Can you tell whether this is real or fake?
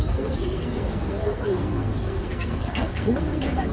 fake